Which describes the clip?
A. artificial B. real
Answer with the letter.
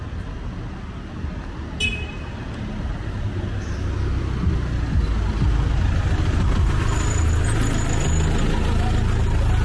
B